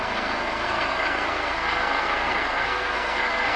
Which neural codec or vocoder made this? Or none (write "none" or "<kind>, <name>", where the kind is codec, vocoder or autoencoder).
codec, SNAC